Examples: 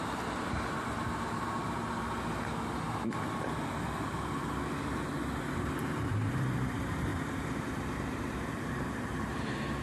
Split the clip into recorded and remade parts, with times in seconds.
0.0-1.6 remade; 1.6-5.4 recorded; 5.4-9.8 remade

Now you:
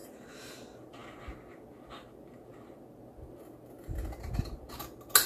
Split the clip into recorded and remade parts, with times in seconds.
0.0-5.3 recorded

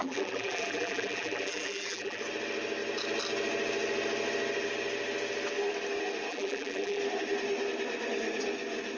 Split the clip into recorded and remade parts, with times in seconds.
0.0-2.2 remade; 2.2-6.3 recorded; 6.3-7.0 remade; 7.0-9.0 recorded

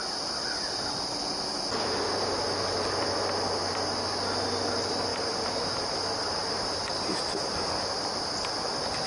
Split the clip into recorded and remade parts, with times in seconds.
0.0-5.1 recorded; 5.1-7.7 remade; 7.7-9.1 recorded

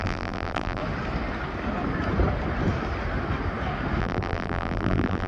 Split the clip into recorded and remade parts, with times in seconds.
0.0-0.8 remade; 0.8-4.0 recorded; 4.0-5.3 remade

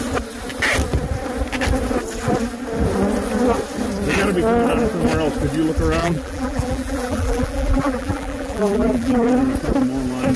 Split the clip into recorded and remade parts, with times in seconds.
0.0-6.0 recorded; 6.0-9.3 remade; 9.3-10.4 recorded

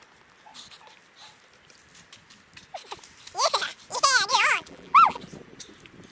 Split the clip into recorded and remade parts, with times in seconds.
0.0-4.3 recorded; 4.3-5.2 remade; 5.2-6.1 recorded